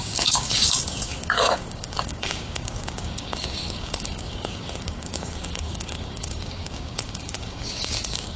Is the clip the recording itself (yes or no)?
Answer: no